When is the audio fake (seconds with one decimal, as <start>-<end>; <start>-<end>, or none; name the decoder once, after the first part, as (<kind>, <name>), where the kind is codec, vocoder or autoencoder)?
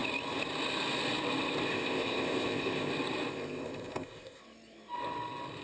1.7-2.9 (codec, ZipCodec); 3.3-4.4